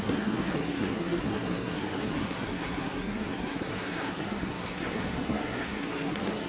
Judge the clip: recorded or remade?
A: remade